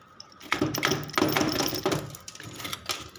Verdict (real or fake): real